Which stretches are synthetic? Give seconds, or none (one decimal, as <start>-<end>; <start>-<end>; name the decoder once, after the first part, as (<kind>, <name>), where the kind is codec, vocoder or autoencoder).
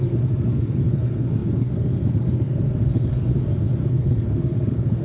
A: 0.0-3.3 (codec, SNAC); 3.9-5.0